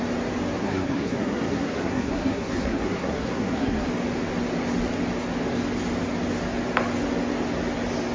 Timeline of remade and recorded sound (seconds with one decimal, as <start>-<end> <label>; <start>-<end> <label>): 0.0-0.6 recorded; 0.6-3.9 remade; 3.9-8.1 recorded